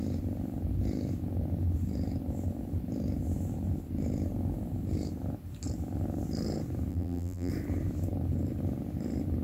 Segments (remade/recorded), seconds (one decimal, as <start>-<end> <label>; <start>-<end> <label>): 0.0-6.9 recorded; 6.9-7.5 remade; 7.5-9.4 recorded